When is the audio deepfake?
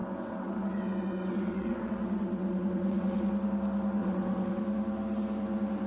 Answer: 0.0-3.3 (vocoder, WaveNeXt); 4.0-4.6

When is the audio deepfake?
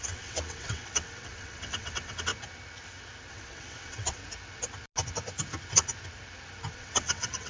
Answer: 0.0-2.3 (vocoder, WaveNeXt); 3.3-4.2; 6.7-7.5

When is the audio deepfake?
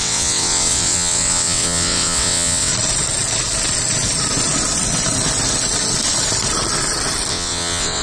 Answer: 0.0-2.7 (vocoder, WaveNeXt); 7.3-8.0